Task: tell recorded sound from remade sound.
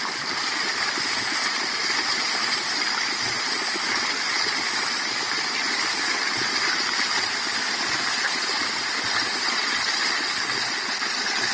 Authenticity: remade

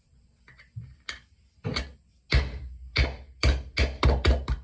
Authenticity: recorded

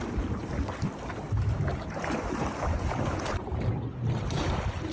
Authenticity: recorded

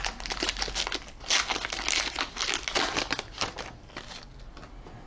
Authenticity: recorded